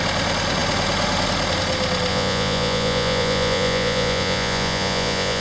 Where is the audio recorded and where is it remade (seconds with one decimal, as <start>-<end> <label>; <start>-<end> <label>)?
0.0-2.1 recorded; 2.1-5.4 remade